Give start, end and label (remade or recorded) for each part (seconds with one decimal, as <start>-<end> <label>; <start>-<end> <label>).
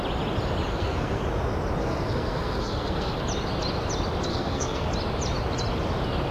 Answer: 0.0-0.7 recorded; 0.7-1.2 remade; 1.2-1.8 recorded; 1.8-3.2 remade; 3.2-4.3 recorded; 4.3-4.9 remade; 4.9-6.3 recorded